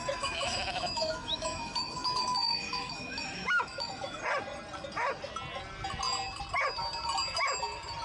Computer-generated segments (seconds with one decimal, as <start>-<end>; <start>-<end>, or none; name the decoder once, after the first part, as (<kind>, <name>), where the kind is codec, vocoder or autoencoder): 0.0-4.2 (autoencoder, DAC-VAE)